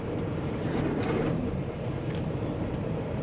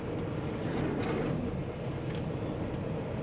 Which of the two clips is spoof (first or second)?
first